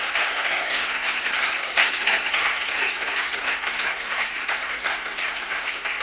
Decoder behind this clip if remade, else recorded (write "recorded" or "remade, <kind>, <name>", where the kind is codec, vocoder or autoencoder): remade, codec, SNAC